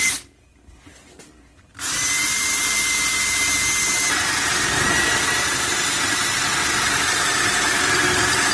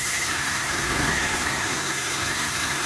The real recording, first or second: first